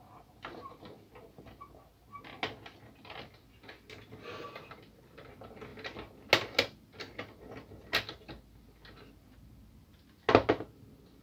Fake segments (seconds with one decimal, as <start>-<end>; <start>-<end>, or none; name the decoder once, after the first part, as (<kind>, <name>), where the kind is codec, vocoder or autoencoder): none